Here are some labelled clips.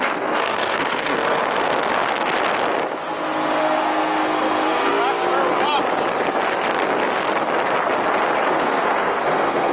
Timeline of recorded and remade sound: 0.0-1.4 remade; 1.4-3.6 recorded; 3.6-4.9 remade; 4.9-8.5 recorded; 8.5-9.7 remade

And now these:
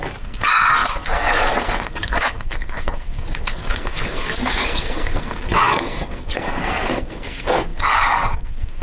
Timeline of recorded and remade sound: 0.0-8.8 remade